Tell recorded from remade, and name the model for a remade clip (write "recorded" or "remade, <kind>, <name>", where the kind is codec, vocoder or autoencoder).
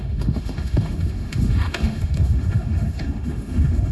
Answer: remade, autoencoder, DAC-VAE